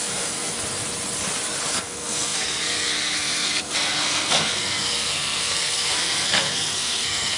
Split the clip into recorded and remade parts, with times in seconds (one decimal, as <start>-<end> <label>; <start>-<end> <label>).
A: 0.0-0.5 remade; 0.5-1.7 recorded; 1.7-7.4 remade